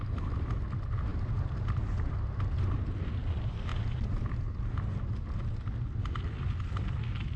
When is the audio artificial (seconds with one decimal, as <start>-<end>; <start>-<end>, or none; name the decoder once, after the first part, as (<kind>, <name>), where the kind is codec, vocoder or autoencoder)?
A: none